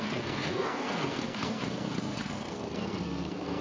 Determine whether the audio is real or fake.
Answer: fake